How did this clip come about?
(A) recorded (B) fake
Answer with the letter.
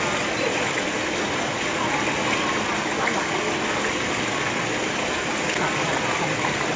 A